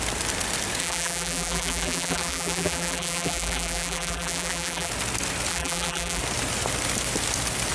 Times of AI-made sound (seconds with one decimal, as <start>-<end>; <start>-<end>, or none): 0.8-4.9; 5.5-6.2